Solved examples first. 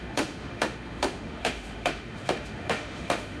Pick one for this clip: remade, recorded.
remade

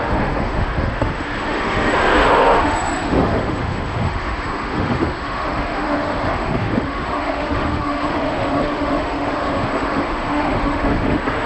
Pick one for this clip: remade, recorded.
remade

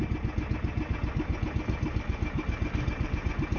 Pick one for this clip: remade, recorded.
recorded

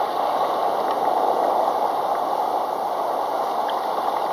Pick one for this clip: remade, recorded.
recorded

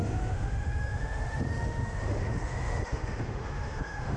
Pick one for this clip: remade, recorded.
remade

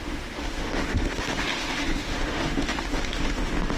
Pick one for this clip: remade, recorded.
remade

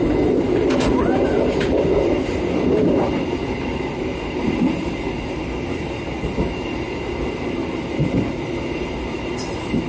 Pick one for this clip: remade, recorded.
recorded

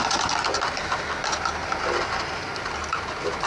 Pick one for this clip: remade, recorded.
recorded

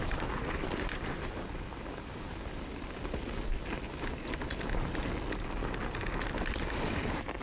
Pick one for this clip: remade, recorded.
recorded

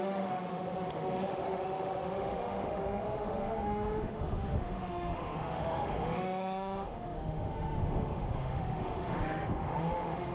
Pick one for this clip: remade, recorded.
remade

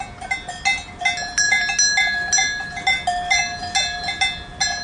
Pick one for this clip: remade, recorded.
recorded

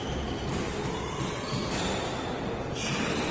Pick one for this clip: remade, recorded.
recorded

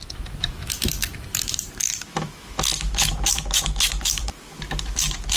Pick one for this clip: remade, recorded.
remade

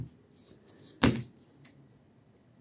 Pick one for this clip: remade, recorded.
recorded